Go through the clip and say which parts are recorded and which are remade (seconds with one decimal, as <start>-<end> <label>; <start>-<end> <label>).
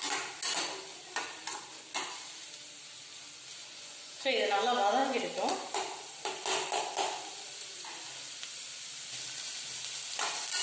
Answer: 0.0-3.6 recorded; 3.6-4.2 remade; 4.2-10.6 recorded